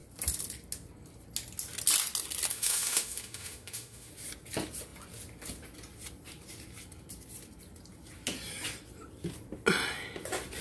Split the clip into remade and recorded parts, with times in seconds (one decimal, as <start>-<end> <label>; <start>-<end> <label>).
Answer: 0.0-2.5 recorded; 2.5-4.1 remade; 4.1-10.6 recorded